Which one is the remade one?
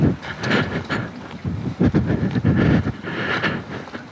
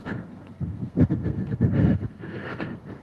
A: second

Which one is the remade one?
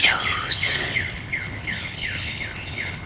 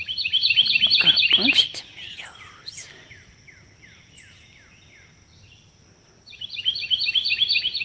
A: first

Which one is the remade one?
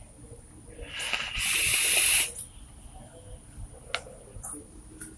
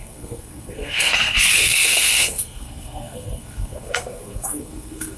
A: second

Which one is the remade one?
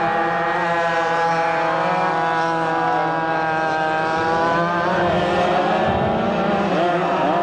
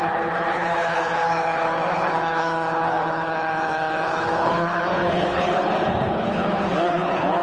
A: second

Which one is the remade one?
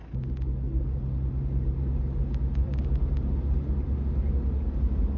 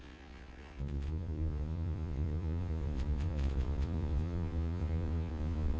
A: second